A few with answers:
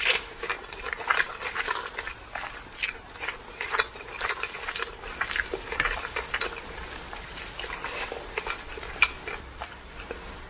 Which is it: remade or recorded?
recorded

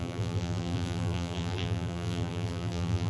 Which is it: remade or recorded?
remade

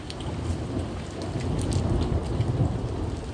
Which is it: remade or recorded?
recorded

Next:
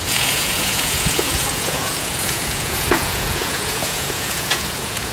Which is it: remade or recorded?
remade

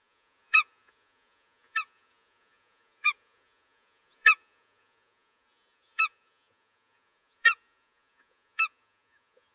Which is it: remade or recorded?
remade